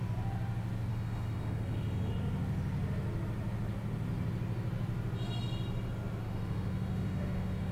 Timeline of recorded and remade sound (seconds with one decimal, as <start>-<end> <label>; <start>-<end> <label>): 0.0-0.9 recorded; 0.9-2.1 remade; 2.1-6.2 recorded; 6.2-7.7 remade